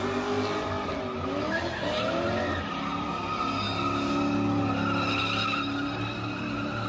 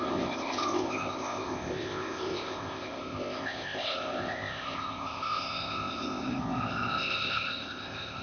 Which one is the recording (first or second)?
first